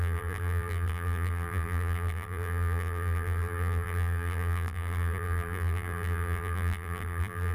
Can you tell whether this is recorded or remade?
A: remade